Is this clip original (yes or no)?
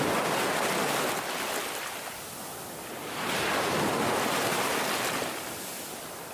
yes